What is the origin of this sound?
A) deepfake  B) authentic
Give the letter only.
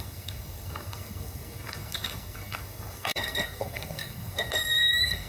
A